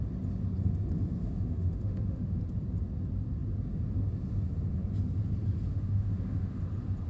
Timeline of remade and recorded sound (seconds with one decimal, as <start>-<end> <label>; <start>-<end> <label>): 0.0-1.2 recorded; 1.2-2.4 remade; 2.4-5.7 recorded; 5.7-6.6 remade; 6.6-7.1 recorded